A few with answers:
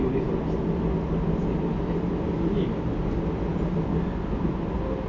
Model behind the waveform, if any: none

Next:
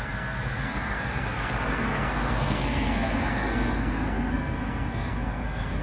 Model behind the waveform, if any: codec, SNAC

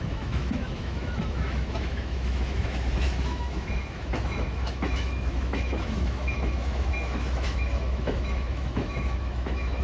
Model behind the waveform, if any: autoencoder, DAC-VAE